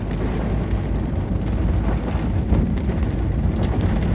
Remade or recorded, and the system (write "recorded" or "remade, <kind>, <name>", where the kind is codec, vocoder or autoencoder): recorded